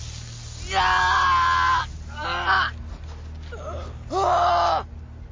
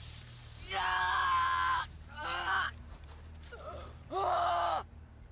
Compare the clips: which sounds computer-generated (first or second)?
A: second